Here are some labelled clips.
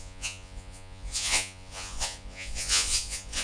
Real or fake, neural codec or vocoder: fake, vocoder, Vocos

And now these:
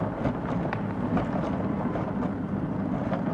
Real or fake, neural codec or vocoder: real